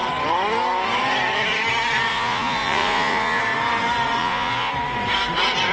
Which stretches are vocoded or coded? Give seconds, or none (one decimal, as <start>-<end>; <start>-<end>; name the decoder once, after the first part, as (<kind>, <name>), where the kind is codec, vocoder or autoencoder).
2.1-3.4 (vocoder, Vocos); 4.2-4.7